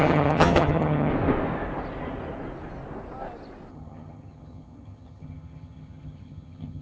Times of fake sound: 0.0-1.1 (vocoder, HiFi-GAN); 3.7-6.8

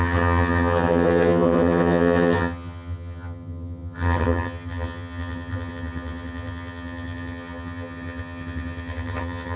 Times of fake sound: 0.0-9.6 (vocoder, HiFi-GAN)